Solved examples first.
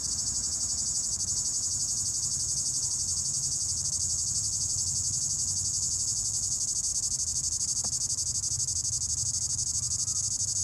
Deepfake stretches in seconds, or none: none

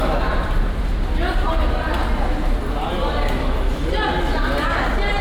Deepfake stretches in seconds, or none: 0.0-0.8 (vocoder, BigVGAN v2)

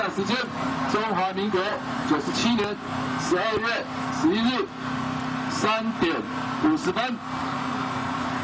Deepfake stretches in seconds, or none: 0.0-2.4 (vocoder, BigVGAN v2); 7.4-8.4

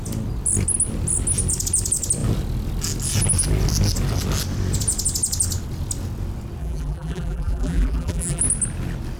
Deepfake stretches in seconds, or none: 6.6-8.4 (vocoder, BigVGAN v2)

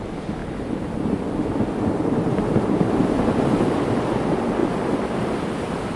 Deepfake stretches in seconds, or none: none

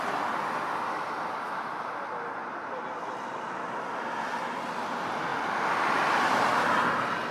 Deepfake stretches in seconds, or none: none

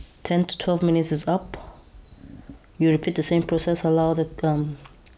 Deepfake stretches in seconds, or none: none

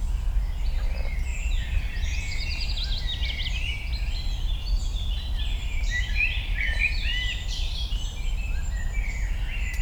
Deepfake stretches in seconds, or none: 1.3-2.7 (vocoder, BigVGAN v2); 5.6-7.9